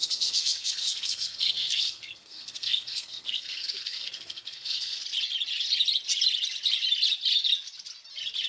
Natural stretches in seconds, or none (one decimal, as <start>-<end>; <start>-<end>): 5.0-8.5